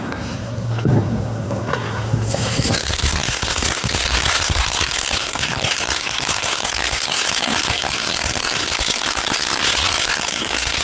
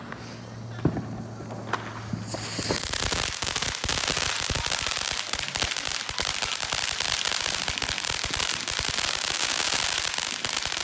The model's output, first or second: first